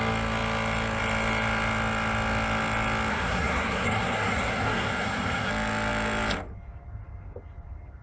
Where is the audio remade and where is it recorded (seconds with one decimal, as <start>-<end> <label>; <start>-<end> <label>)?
0.0-3.1 recorded; 3.1-5.5 remade; 5.5-8.0 recorded